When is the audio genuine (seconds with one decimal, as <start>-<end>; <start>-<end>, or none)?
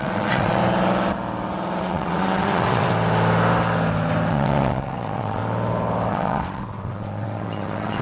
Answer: 0.6-1.8; 2.9-4.3; 5.4-6.1